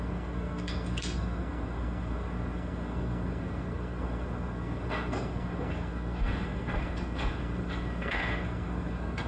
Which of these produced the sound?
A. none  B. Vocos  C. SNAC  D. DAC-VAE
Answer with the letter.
C